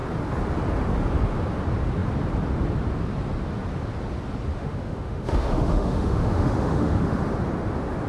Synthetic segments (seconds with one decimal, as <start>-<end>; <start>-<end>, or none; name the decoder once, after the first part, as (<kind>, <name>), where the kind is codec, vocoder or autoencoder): 4.5-7.2 (autoencoder, DAC-VAE)